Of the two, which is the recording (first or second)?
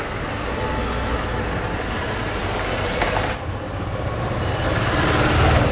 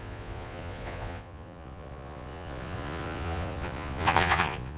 first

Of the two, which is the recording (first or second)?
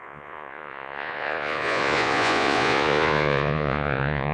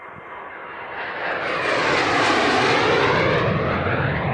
second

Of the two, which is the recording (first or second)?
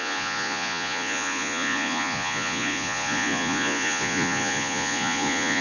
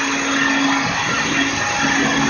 second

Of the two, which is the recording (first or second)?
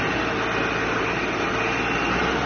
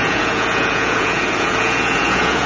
first